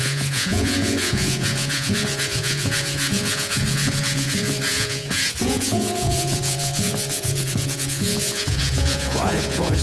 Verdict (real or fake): fake